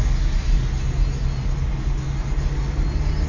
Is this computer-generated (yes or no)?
no